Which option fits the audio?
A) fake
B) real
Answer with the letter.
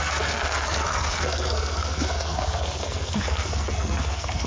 A